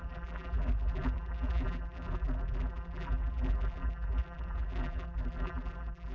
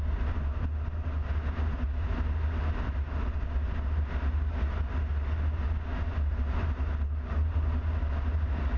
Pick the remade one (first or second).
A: first